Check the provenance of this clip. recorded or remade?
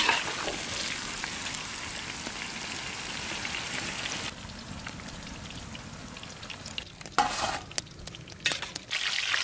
recorded